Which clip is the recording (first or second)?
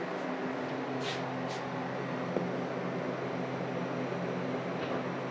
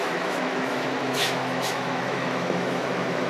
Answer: first